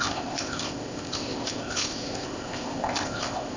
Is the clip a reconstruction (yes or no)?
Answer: yes